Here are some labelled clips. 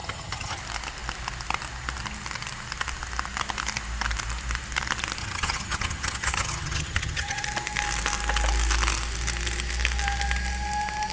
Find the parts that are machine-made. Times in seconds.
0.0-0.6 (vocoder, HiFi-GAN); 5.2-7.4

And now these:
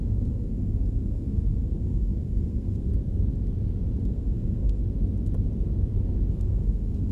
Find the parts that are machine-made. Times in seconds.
0.0-2.9 (codec, SNAC); 4.0-4.8; 6.3-7.1

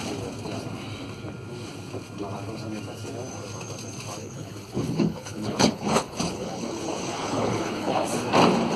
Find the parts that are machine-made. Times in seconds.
4.2-8.1 (codec, HILCodec)

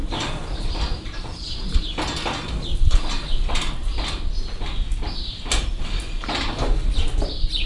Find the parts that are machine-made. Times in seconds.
0.0-1.8 (vocoder, BigVGAN v2)

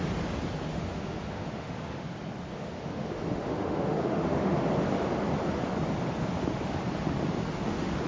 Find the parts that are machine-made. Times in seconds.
0.7-2.0 (autoencoder, DAC-VAE); 2.5-4.6